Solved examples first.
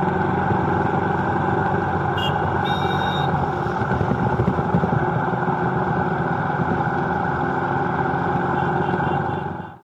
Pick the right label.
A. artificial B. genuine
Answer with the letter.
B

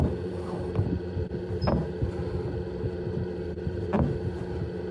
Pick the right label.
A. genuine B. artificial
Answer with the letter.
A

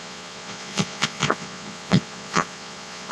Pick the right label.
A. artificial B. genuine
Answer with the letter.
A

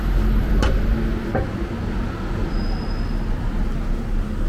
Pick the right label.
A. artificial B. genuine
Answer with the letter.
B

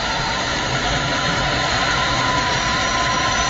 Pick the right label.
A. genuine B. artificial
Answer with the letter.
A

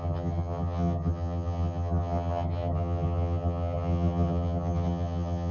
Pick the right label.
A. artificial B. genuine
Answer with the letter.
A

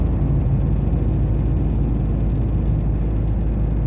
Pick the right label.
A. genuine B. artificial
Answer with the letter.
A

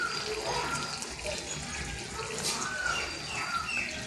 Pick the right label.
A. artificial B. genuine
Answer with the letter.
B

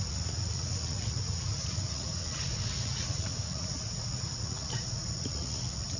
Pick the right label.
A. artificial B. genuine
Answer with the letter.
A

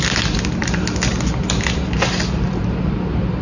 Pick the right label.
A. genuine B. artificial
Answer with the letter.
A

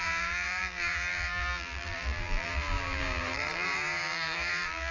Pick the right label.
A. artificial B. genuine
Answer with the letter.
A